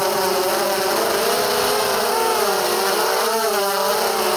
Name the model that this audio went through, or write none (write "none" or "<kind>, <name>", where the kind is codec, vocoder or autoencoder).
none